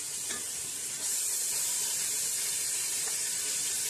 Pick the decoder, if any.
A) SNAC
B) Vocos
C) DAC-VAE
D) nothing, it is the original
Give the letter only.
D